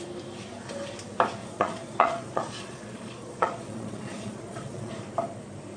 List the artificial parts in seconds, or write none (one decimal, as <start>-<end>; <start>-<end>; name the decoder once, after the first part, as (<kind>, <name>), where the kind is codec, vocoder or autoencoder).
1.4-4.9 (vocoder, Vocos)